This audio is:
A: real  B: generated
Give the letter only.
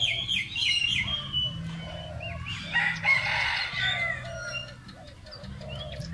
A